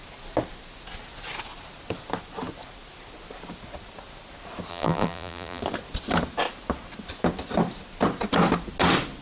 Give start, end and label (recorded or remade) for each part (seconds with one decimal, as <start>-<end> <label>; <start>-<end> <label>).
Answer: 0.0-4.7 recorded; 4.7-5.6 remade; 5.6-9.2 recorded